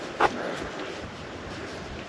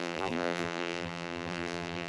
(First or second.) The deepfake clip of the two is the second